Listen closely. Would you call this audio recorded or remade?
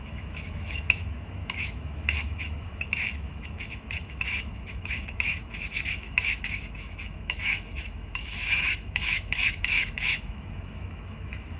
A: remade